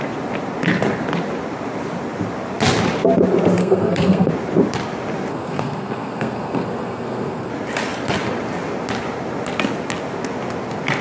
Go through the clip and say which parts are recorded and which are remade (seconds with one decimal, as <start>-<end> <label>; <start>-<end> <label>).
0.0-3.6 recorded; 3.6-4.3 remade; 4.3-5.3 recorded; 5.3-7.5 remade; 7.5-11.0 recorded